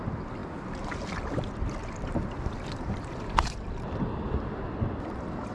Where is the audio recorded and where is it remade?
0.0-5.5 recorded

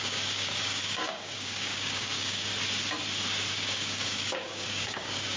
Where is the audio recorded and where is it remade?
0.0-2.5 remade; 2.5-3.5 recorded; 3.5-5.4 remade

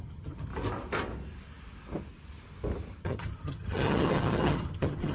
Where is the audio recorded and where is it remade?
0.0-0.5 remade; 0.5-3.0 recorded; 3.0-5.1 remade

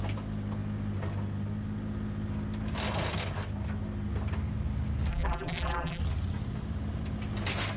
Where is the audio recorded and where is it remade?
0.0-5.1 recorded; 5.1-6.0 remade; 6.0-7.8 recorded

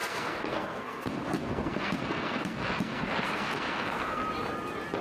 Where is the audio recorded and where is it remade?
0.0-4.2 remade; 4.2-5.0 recorded

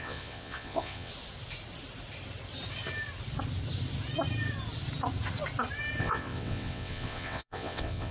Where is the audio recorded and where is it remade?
0.0-1.1 remade; 1.1-6.0 recorded; 6.0-8.1 remade